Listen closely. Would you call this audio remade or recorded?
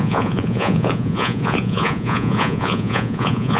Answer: remade